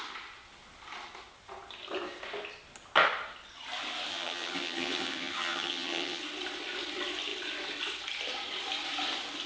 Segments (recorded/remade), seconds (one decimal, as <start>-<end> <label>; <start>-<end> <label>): 0.0-4.1 recorded; 4.1-6.2 remade; 6.2-9.5 recorded